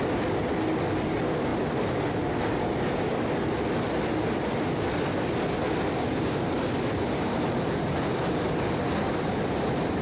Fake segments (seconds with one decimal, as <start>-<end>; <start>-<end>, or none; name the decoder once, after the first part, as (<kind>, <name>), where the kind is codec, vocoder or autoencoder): none